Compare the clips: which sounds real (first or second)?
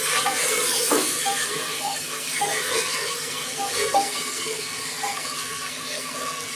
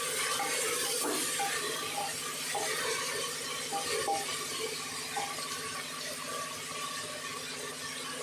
second